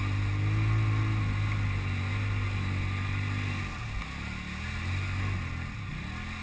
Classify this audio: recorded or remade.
recorded